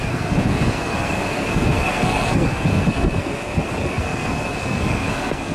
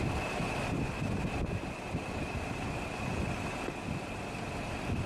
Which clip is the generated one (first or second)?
first